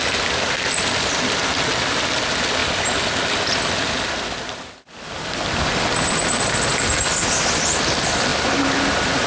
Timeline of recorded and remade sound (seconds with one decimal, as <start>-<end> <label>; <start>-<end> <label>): 0.0-9.3 recorded